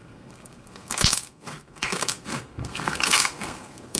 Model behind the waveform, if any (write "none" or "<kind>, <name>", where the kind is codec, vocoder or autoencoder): codec, SNAC